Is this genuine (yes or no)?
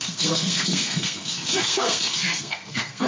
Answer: no